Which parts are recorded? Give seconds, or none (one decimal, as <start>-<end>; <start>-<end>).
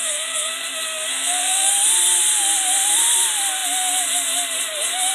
0.5-1.1; 1.7-5.1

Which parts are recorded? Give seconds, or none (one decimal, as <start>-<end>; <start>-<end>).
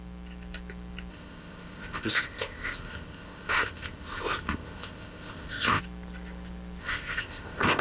0.0-1.1; 5.8-6.8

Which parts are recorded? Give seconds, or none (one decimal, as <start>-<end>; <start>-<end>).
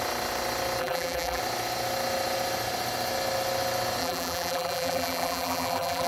0.0-0.8; 1.4-4.0